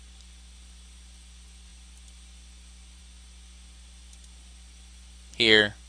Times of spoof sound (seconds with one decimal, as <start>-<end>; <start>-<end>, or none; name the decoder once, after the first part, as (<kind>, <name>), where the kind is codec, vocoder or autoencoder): none